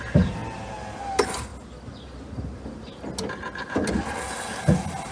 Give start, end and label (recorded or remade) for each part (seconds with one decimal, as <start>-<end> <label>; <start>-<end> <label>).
0.0-5.1 recorded

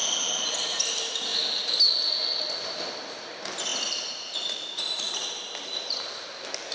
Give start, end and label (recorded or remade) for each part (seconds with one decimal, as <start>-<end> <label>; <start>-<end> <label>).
0.0-6.7 recorded

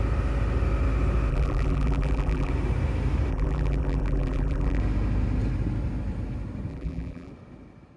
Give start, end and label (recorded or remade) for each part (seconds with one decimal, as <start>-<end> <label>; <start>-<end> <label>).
0.0-1.3 recorded; 1.3-2.5 remade; 2.5-3.3 recorded; 3.3-4.8 remade; 4.8-6.7 recorded; 6.7-7.3 remade; 7.3-8.0 recorded

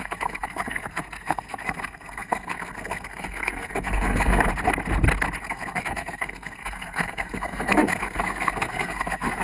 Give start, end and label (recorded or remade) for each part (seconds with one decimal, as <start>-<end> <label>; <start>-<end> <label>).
0.0-4.5 remade; 4.5-5.4 recorded; 5.4-9.4 remade

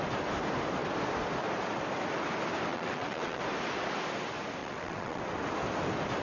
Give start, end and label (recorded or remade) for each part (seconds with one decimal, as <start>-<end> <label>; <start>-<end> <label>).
0.0-2.7 recorded; 2.7-3.4 remade; 3.4-4.6 recorded; 4.6-5.2 remade; 5.2-6.2 recorded

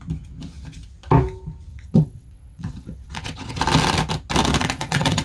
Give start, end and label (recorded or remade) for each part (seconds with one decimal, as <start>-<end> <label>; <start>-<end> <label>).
0.0-1.7 recorded; 1.7-3.6 remade; 3.6-4.6 recorded; 4.6-5.2 remade

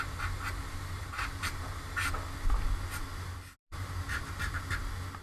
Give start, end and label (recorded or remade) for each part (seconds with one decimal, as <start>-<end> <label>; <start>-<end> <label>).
0.0-1.0 recorded; 1.0-2.1 remade; 2.1-3.6 recorded; 3.6-4.2 remade; 4.2-5.2 recorded